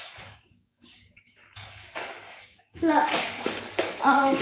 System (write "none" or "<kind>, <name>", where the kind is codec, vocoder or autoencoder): codec, DAC